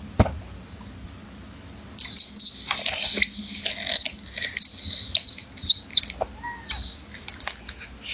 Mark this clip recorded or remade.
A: recorded